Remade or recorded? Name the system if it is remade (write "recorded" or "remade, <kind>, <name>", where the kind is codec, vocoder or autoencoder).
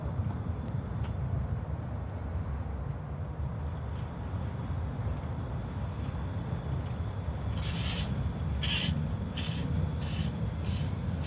recorded